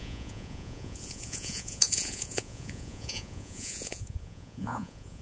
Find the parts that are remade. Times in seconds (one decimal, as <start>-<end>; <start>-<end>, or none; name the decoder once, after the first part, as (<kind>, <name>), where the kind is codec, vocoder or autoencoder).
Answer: 0.0-5.2 (vocoder, Vocos)